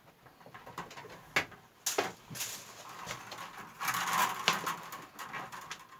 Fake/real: real